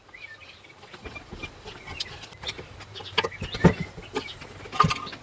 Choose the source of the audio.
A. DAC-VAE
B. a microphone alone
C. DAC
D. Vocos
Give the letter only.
B